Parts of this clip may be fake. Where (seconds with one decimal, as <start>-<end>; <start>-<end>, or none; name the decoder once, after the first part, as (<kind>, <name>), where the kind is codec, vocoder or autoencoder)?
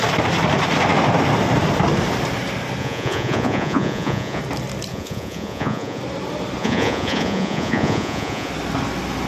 2.8-4.4 (vocoder, Vocos); 4.9-6.0; 6.6-8.5